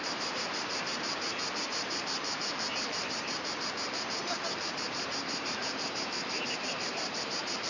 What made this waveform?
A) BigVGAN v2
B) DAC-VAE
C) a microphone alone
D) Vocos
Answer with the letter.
A